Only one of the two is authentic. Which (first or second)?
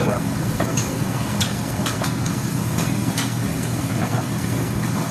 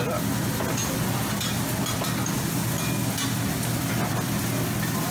second